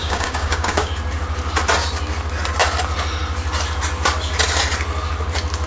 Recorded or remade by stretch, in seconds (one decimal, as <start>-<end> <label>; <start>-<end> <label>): 0.0-0.9 remade; 0.9-5.7 recorded

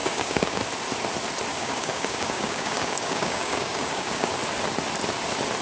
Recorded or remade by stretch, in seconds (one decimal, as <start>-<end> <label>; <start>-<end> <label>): 0.0-0.6 remade; 0.6-1.5 recorded; 1.5-4.3 remade; 4.3-5.6 recorded

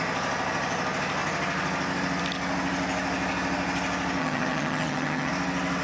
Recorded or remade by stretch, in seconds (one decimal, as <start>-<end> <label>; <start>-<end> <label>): 0.0-4.2 recorded; 4.2-5.3 remade; 5.3-5.8 recorded